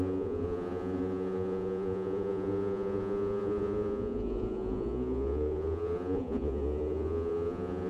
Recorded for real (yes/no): no